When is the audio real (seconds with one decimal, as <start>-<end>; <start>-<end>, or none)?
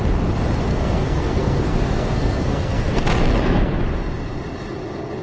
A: 0.0-0.7; 3.8-5.2